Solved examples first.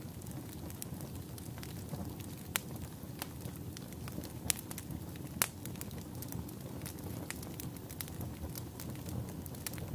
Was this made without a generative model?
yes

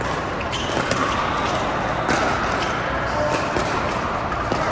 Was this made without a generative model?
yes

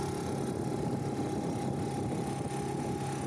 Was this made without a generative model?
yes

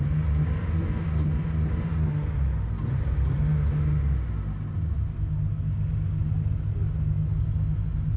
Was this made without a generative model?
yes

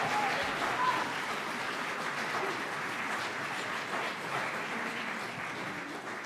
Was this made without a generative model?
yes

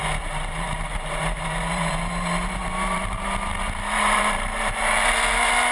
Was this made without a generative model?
no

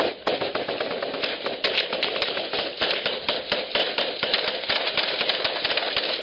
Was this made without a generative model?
yes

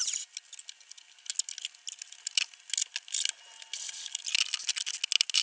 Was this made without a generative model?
yes